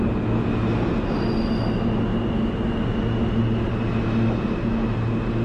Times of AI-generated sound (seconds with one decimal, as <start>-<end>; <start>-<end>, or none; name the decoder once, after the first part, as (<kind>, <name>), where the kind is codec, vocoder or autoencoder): none